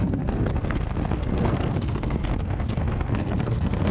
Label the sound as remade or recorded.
remade